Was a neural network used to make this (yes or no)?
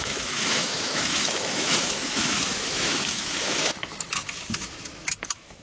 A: yes